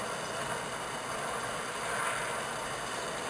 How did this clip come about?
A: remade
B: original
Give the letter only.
B